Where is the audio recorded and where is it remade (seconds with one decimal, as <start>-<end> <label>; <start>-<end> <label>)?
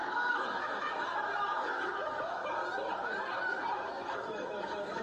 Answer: 0.0-2.6 remade; 2.6-3.7 recorded; 3.7-5.0 remade